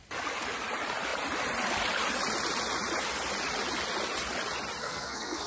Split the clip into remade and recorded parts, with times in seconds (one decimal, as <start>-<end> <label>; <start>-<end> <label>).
0.0-4.8 recorded; 4.8-5.5 remade